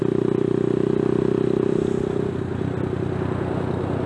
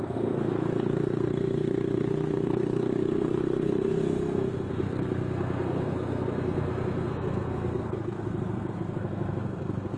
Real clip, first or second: first